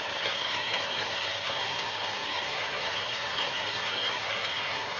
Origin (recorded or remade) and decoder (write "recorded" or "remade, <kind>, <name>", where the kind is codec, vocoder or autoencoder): remade, codec, SNAC